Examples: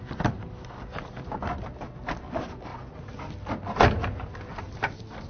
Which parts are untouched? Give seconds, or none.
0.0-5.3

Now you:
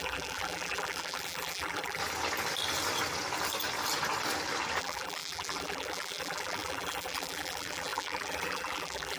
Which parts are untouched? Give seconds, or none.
2.0-4.8

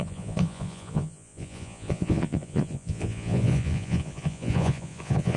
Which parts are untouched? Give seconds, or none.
none

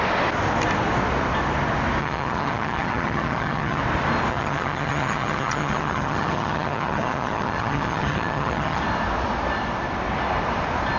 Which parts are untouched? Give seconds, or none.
0.0-2.0; 3.8-4.3; 8.8-11.0

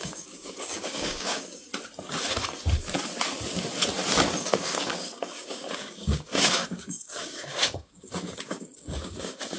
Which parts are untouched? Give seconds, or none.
1.7-4.4

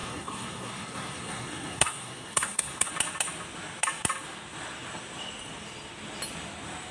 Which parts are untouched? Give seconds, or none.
2.9-6.9